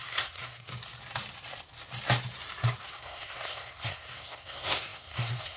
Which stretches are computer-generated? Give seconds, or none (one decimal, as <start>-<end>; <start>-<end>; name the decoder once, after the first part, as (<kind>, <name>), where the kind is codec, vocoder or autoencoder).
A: 0.0-0.7 (codec, SNAC); 2.8-5.6